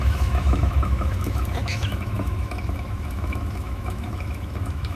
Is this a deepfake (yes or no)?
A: yes